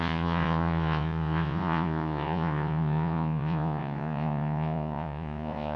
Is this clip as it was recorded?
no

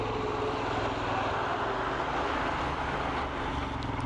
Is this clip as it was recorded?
yes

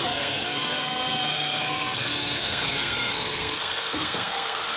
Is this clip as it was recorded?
no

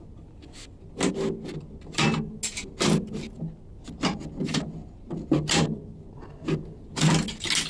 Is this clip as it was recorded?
yes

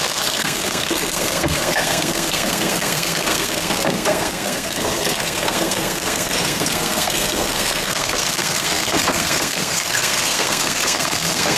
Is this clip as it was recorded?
no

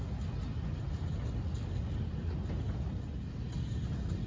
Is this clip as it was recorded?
yes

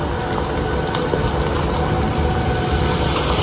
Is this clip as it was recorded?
yes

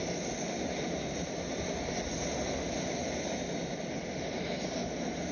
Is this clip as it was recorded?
yes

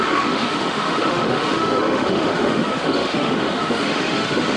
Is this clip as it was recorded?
no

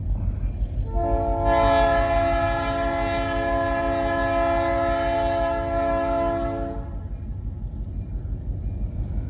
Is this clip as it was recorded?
yes